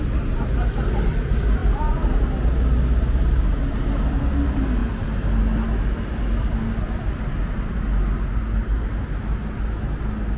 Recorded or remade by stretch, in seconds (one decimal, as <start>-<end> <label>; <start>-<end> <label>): 0.0-10.4 recorded